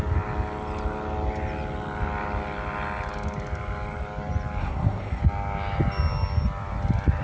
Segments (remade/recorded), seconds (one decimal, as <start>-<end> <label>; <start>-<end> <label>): 0.0-4.6 recorded; 4.6-5.2 remade; 5.2-7.2 recorded